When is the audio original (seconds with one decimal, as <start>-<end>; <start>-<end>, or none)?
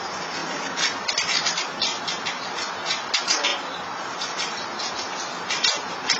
0.0-6.2